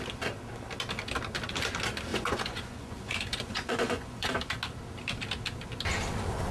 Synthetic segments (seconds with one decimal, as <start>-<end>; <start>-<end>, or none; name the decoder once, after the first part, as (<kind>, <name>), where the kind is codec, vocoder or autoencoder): 2.1-4.3 (vocoder, Vocos)